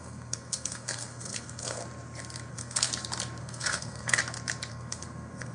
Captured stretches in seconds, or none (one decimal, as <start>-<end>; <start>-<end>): 1.8-2.5; 2.9-3.4; 4.2-4.7